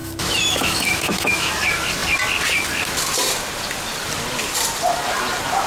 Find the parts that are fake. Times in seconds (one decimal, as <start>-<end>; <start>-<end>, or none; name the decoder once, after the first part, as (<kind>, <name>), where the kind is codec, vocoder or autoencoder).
0.0-1.5 (autoencoder, DAC-VAE)

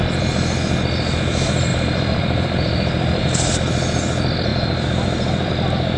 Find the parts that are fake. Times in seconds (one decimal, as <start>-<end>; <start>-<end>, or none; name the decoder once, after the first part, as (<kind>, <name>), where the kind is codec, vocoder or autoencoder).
1.7-3.2 (vocoder, BigVGAN v2); 4.5-5.5

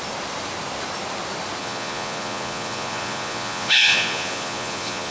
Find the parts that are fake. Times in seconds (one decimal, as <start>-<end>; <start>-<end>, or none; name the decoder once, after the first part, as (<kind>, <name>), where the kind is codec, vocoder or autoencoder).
1.6-5.1 (vocoder, Vocos)

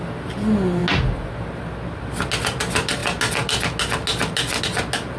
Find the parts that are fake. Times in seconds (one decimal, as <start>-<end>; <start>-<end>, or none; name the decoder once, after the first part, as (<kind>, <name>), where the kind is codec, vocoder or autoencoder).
none

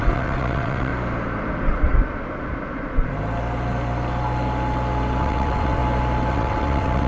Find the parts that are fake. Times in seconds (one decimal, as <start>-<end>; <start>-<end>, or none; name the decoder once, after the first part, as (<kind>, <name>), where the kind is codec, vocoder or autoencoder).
0.0-0.9 (vocoder, WaveNeXt); 5.2-5.8; 6.3-7.1

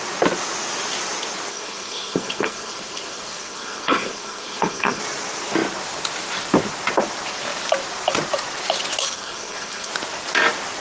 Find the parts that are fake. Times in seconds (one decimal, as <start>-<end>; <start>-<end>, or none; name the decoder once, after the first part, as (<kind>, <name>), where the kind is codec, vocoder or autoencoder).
1.5-5.0 (codec, SNAC); 9.0-9.9

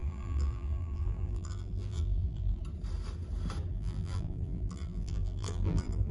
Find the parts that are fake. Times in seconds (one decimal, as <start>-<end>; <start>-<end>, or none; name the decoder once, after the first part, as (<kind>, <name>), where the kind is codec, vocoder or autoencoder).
0.0-2.6 (vocoder, BigVGAN v2); 3.7-6.1